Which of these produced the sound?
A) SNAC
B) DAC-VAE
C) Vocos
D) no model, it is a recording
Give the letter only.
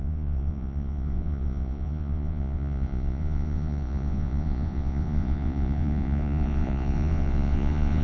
C